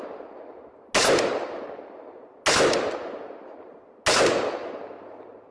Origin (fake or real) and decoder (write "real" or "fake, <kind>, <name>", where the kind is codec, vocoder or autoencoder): real